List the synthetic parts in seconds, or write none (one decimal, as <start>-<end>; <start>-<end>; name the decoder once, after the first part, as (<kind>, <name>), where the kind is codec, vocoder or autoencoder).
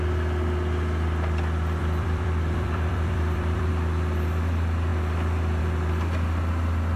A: 1.8-3.7 (vocoder, BigVGAN v2)